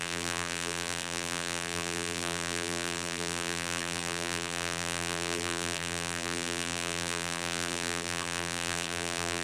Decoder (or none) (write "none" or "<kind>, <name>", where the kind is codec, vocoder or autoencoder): vocoder, BigVGAN v2